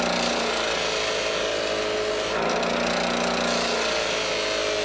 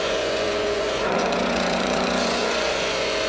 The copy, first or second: second